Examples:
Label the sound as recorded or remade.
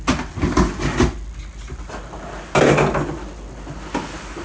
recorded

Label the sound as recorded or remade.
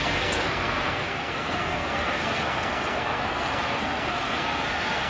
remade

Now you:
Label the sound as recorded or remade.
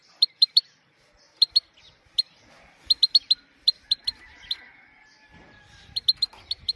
recorded